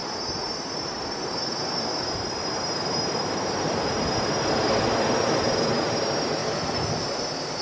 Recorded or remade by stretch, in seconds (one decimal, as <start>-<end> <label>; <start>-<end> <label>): 0.0-4.5 remade; 4.5-6.4 recorded; 6.4-7.6 remade